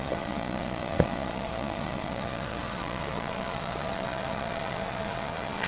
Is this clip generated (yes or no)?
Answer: yes